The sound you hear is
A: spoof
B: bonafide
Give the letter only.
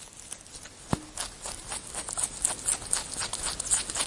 B